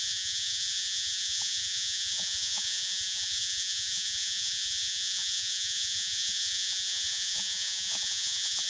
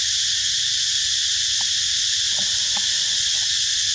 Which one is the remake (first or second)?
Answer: first